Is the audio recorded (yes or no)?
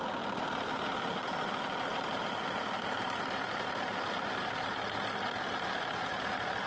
yes